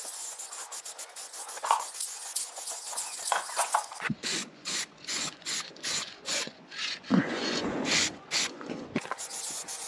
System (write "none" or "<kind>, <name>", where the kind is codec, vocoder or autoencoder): vocoder, Vocos